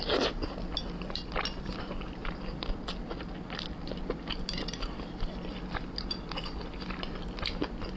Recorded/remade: recorded